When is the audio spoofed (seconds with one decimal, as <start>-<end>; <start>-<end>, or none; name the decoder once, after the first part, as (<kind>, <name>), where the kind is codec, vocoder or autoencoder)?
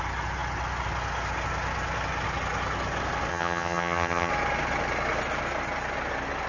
3.3-4.3 (vocoder, HiFi-GAN)